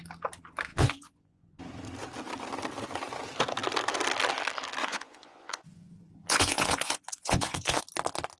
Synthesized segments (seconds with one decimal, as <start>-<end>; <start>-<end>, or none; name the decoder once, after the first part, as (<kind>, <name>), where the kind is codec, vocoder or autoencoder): 0.7-1.6 (vocoder, Vocos); 4.8-7.8